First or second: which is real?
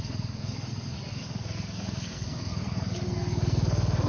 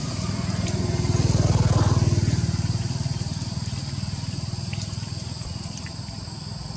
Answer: second